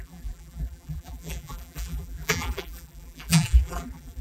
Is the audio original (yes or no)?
no